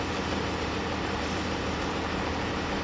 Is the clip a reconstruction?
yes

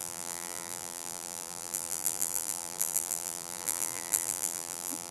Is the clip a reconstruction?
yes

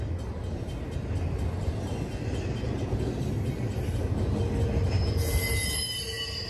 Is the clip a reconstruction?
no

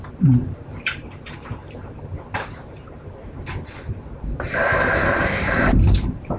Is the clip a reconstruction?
yes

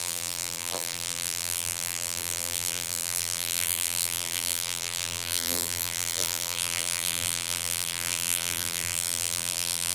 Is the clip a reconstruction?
yes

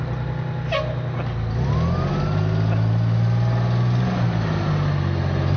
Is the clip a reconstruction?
no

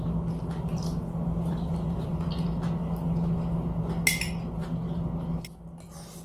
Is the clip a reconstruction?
no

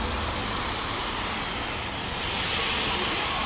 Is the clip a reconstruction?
no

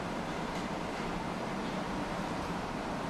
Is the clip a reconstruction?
yes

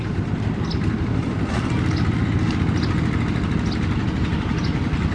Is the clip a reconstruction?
no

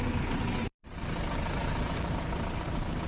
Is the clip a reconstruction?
yes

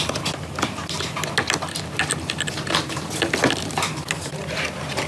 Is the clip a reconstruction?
no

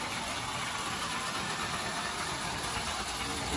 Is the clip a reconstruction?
no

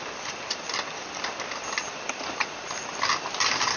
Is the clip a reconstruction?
yes